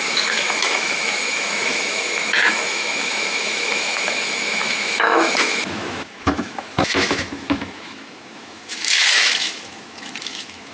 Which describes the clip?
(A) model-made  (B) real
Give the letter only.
A